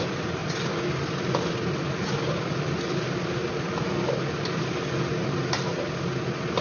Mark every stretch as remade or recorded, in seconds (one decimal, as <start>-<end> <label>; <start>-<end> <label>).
0.0-6.6 recorded